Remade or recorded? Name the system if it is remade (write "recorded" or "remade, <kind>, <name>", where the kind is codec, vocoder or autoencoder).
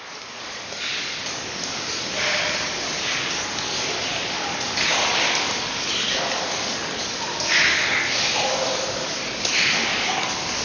remade, codec, DAC